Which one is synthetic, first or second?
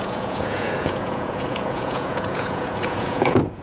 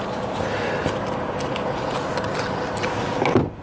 first